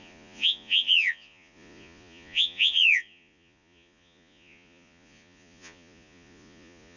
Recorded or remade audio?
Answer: remade